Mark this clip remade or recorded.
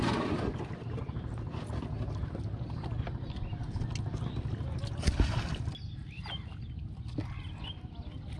recorded